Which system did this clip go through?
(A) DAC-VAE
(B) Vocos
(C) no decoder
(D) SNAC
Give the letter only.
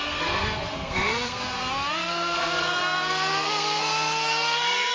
D